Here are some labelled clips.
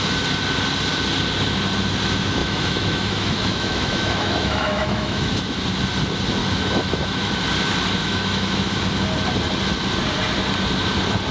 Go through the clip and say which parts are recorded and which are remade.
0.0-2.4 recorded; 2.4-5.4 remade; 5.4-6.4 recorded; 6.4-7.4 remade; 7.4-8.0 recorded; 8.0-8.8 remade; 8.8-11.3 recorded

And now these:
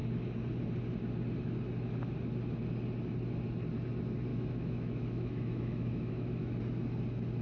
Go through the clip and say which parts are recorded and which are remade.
0.0-4.3 recorded; 4.3-6.6 remade; 6.6-7.4 recorded

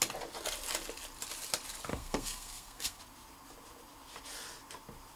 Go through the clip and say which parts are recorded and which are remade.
0.0-1.9 recorded; 1.9-3.0 remade; 3.0-5.2 recorded

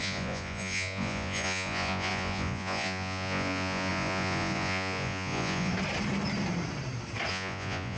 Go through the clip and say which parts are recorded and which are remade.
0.0-5.7 remade; 5.7-7.3 recorded; 7.3-8.0 remade

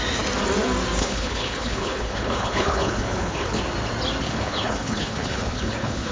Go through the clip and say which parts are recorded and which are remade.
0.0-1.0 recorded; 1.0-3.6 remade; 3.6-4.2 recorded; 4.2-6.1 remade

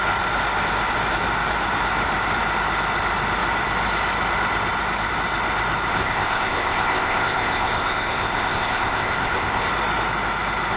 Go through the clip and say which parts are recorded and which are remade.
0.0-5.9 recorded; 5.9-9.7 remade; 9.7-10.8 recorded

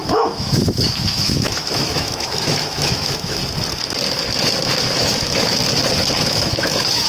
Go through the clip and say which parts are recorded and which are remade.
0.0-3.4 remade; 3.4-5.0 recorded; 5.0-5.6 remade; 5.6-6.2 recorded; 6.2-7.1 remade

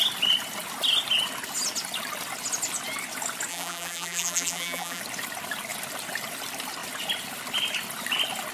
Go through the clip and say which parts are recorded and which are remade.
0.0-3.5 recorded; 3.5-5.0 remade; 5.0-8.5 recorded